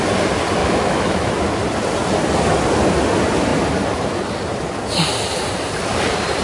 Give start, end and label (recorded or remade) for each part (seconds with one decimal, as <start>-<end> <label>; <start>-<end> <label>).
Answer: 0.0-0.6 recorded; 0.6-1.3 remade; 1.3-6.4 recorded